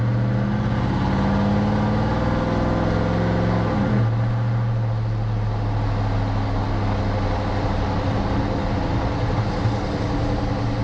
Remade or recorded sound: recorded